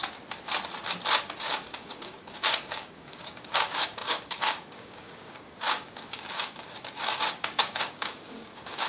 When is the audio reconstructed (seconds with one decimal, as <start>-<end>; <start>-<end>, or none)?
1.2-8.9